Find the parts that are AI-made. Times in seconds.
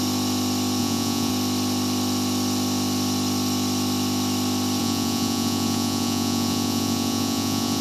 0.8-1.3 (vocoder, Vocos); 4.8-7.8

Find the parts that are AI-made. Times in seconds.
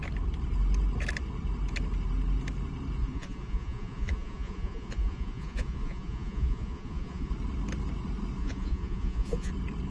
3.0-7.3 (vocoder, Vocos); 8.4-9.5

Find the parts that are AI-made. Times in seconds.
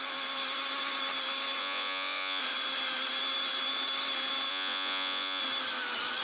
1.6-2.4 (vocoder, Vocos); 4.5-5.4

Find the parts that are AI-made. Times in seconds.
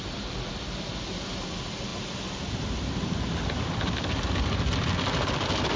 none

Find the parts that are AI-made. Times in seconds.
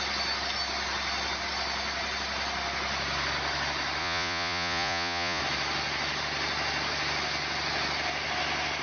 4.0-5.4 (vocoder, Vocos)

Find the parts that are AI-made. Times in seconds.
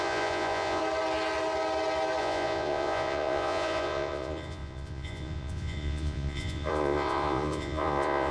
0.0-0.8 (vocoder, Vocos); 2.2-8.3